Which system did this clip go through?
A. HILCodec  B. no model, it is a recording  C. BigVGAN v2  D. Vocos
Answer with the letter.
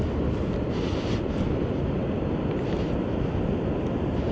B